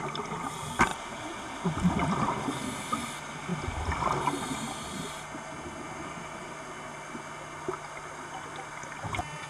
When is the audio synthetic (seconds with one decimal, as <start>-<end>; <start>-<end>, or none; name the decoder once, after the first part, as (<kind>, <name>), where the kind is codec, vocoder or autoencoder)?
0.9-2.2 (vocoder, BigVGAN v2)